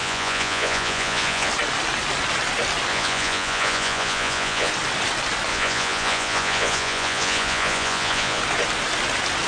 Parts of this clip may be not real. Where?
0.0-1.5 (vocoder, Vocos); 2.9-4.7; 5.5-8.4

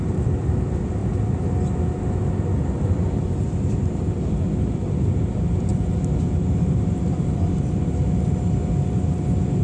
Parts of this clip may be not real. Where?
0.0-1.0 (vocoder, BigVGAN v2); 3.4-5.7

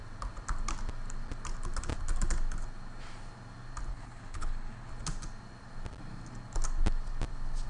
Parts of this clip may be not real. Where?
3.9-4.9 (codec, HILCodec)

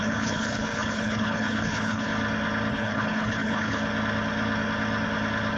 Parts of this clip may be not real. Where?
0.0-2.1 (codec, HILCodec); 2.7-3.8